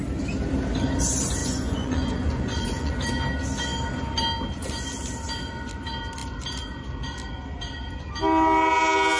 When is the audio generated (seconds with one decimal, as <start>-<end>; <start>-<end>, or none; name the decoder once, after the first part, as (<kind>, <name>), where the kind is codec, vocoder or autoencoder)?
1.4-2.9 (vocoder, Vocos)